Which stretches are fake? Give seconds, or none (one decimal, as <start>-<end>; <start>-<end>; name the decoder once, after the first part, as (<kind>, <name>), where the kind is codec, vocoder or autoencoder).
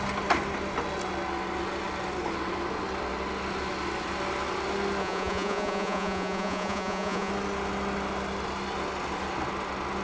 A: 5.0-7.3 (vocoder, Vocos)